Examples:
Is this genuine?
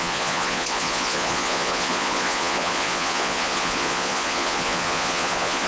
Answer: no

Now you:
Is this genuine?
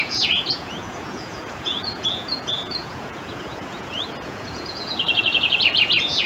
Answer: no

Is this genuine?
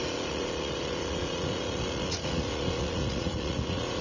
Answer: no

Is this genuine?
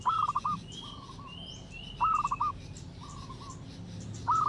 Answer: yes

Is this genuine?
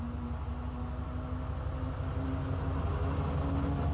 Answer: yes